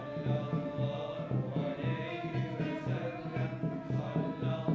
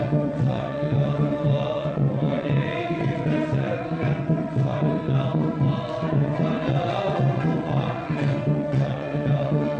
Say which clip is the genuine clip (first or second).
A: first